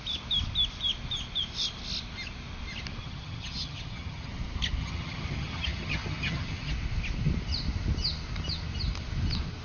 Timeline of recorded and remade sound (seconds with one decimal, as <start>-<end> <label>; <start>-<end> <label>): 0.0-3.0 recorded; 3.0-4.3 remade; 4.3-4.8 recorded; 4.8-6.7 remade; 6.7-9.6 recorded